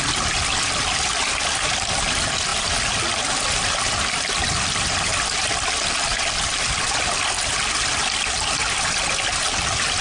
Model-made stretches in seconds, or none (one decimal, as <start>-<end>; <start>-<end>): none

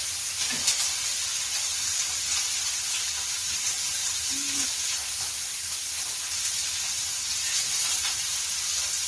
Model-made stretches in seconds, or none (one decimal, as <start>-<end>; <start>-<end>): 4.0-5.7

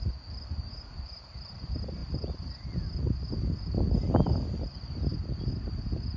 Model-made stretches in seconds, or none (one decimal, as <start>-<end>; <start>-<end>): none

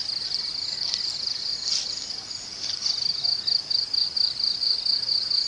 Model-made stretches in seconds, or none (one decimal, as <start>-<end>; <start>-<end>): none